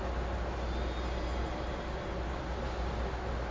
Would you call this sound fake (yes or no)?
no